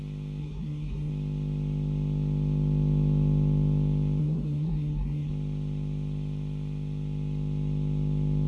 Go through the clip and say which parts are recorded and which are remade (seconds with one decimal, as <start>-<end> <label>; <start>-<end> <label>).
0.0-0.4 recorded; 0.4-1.1 remade; 1.1-4.2 recorded; 4.2-5.3 remade; 5.3-8.5 recorded